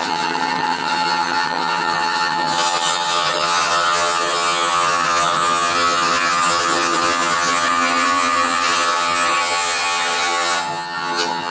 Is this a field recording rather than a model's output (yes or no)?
no